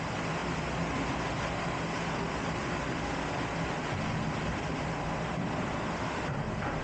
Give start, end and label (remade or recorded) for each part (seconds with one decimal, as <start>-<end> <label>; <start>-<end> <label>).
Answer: 0.0-6.8 recorded

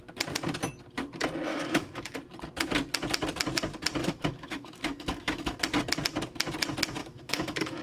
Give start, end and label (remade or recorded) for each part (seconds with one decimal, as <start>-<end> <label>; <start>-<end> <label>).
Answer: 0.0-1.5 recorded; 1.5-2.2 remade; 2.2-4.0 recorded; 4.0-5.6 remade; 5.6-7.0 recorded; 7.0-7.8 remade